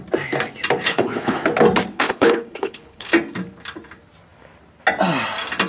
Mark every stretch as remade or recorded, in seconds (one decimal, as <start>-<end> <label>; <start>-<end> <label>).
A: 0.0-0.9 recorded; 0.9-1.4 remade; 1.4-1.9 recorded; 1.9-3.1 remade; 3.1-5.7 recorded